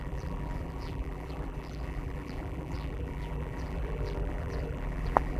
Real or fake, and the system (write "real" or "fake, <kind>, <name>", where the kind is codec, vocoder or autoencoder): fake, vocoder, BigVGAN v2